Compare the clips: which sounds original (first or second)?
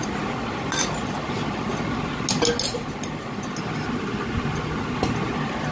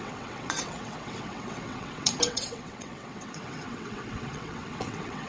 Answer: first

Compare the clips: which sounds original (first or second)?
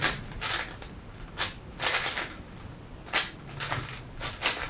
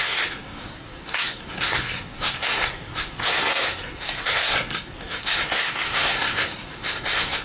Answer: first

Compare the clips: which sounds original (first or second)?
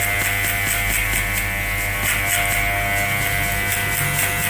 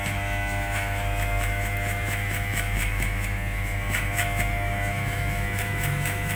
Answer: first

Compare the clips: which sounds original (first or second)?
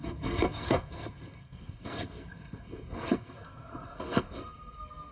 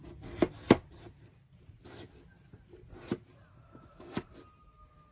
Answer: second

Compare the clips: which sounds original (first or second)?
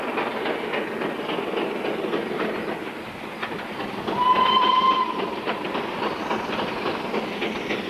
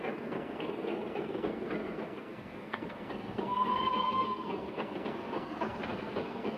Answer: first